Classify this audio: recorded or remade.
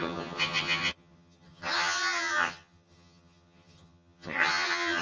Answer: remade